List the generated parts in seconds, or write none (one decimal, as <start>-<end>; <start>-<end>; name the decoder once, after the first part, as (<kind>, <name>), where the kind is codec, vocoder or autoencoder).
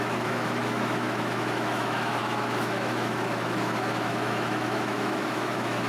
0.0-5.9 (autoencoder, DAC-VAE)